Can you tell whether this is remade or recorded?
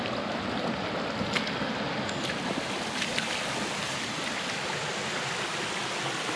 recorded